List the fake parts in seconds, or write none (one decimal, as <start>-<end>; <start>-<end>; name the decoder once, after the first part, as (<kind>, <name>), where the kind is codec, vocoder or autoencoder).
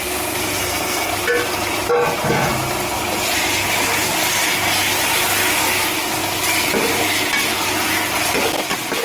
0.6-1.1 (codec, SNAC)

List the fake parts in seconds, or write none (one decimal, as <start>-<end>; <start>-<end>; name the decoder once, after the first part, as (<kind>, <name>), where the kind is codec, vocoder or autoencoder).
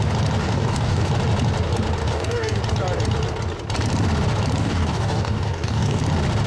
0.4-1.1 (codec, DAC); 2.0-2.6; 4.6-6.0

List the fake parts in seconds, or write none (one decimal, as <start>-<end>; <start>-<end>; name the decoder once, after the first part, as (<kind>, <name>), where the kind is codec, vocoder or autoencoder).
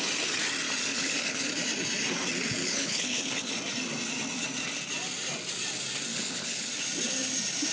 0.9-1.5 (codec, HILCodec); 2.6-3.5; 6.1-6.7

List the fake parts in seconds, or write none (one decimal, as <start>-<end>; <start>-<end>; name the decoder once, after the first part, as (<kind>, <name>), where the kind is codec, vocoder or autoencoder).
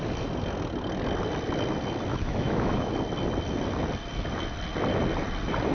2.1-2.9 (autoencoder, DAC-VAE)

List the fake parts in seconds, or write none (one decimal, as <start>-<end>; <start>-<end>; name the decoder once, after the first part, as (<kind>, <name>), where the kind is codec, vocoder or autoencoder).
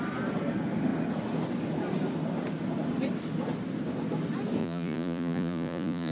4.6-6.1 (vocoder, Vocos)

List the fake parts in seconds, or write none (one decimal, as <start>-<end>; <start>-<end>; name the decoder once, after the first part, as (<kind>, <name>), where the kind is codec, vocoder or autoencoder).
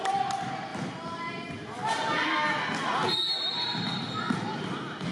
none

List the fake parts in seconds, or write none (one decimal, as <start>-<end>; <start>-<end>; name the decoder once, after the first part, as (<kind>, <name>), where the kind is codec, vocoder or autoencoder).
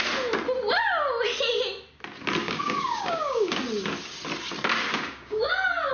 2.4-3.6 (codec, DAC); 4.9-5.5